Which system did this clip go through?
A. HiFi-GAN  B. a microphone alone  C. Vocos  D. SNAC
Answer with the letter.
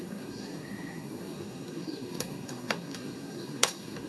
D